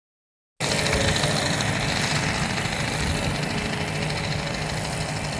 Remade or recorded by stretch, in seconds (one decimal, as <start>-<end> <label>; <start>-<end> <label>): 0.0-5.4 recorded